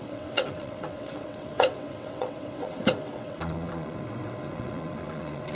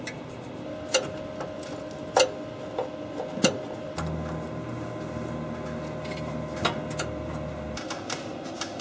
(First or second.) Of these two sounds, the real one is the second